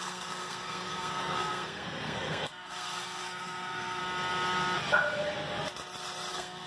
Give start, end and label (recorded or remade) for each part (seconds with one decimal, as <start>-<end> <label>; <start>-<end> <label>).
0.0-4.0 remade; 4.0-6.3 recorded; 6.3-6.7 remade